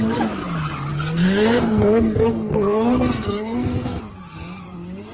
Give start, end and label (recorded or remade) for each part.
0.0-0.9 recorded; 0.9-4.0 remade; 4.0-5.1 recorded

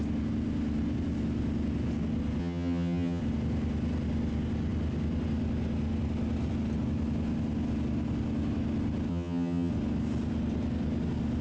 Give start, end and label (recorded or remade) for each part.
0.0-2.4 recorded; 2.4-3.2 remade; 3.2-9.1 recorded; 9.1-9.7 remade; 9.7-11.4 recorded

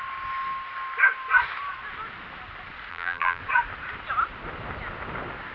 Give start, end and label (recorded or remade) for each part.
0.0-2.9 recorded; 2.9-3.4 remade; 3.4-5.5 recorded

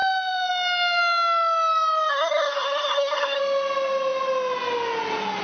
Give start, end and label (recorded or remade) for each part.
0.0-2.1 recorded; 2.1-3.4 remade; 3.4-5.4 recorded